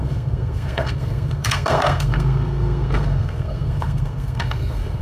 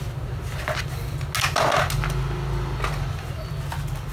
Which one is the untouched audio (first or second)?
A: second